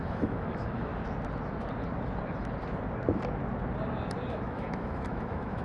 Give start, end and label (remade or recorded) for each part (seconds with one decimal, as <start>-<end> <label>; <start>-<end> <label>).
0.0-0.9 remade; 0.9-4.3 recorded; 4.3-5.6 remade